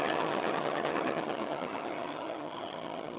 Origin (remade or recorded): remade